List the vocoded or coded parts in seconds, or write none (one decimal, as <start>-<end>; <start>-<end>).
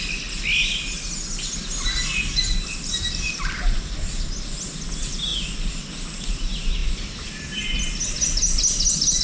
none